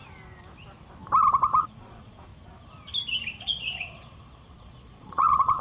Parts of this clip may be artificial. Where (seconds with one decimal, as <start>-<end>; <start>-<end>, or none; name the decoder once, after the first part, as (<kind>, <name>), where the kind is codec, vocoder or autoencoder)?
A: 1.6-2.3 (vocoder, Vocos); 3.4-5.6